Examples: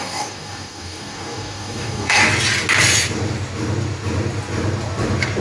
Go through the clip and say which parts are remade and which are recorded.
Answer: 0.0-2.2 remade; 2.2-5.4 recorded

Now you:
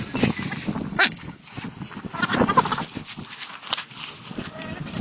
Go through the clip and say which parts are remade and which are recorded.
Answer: 0.0-0.9 recorded; 0.9-1.4 remade; 1.4-5.0 recorded

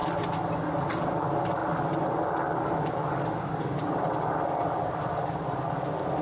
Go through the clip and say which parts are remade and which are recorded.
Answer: 0.0-6.2 recorded

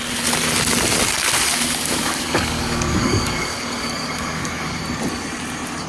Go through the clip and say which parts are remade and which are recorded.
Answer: 0.0-1.5 recorded; 1.5-4.8 remade; 4.8-5.9 recorded

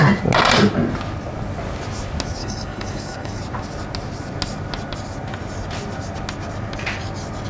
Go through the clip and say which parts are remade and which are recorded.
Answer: 0.0-2.4 recorded; 2.4-3.4 remade; 3.4-7.5 recorded

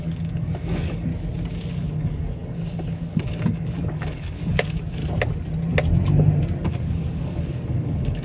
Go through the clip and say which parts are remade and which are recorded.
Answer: 0.0-1.1 remade; 1.1-1.7 recorded; 1.7-5.0 remade; 5.0-6.6 recorded; 6.6-8.2 remade

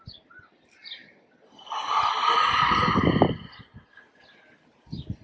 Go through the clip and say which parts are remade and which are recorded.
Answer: 0.0-5.2 recorded